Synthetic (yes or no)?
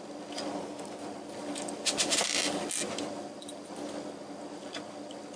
no